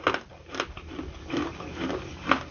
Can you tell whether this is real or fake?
real